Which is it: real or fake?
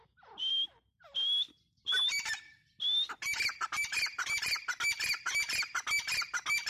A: fake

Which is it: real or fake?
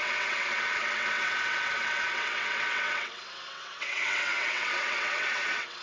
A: fake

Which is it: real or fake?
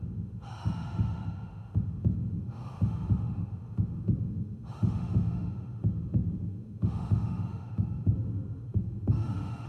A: fake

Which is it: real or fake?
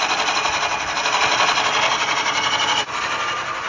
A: real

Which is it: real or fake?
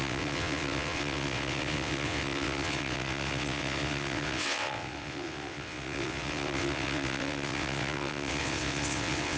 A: fake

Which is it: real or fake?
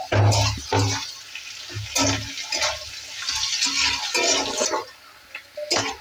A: real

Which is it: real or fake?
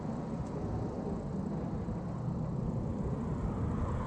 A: real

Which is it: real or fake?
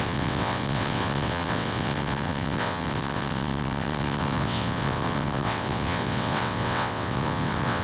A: fake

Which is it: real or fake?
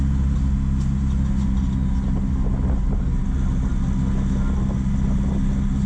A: real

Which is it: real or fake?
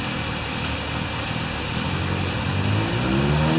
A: real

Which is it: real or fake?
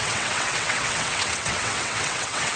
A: fake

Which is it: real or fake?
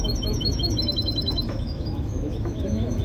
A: fake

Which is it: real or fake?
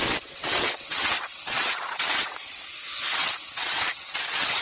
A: fake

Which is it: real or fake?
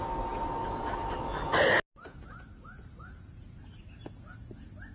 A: real